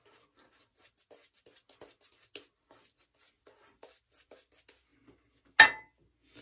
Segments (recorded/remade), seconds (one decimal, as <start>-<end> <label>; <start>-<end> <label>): 0.0-6.4 recorded